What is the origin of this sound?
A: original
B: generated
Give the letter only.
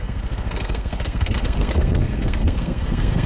B